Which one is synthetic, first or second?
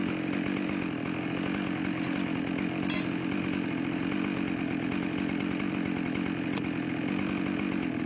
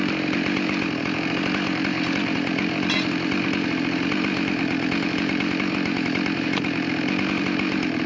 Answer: second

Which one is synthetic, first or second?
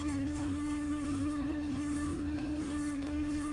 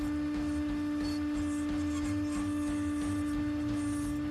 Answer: first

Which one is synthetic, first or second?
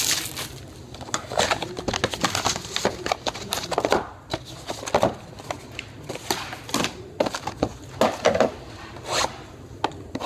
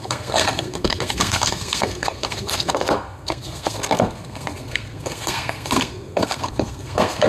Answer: second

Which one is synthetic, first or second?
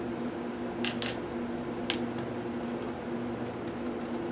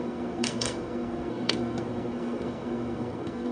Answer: second